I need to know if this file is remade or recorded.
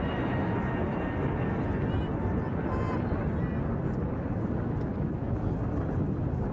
recorded